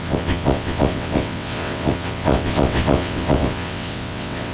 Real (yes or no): no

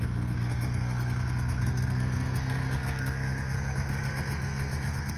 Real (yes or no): no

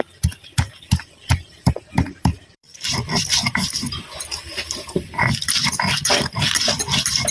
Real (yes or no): no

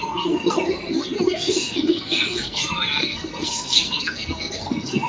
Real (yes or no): no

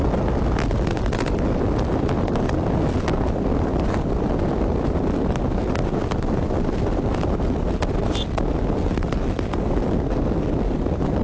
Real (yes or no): yes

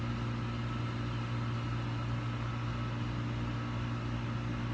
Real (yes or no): yes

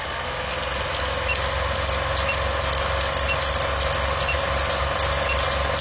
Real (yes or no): yes